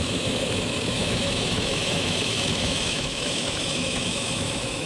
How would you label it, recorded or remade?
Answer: remade